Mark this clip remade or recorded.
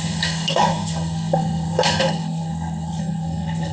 remade